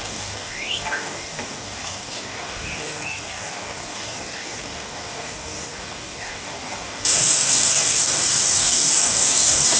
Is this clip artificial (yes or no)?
yes